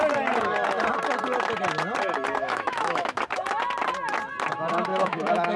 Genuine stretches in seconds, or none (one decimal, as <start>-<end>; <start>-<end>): 0.0-2.4; 3.2-4.9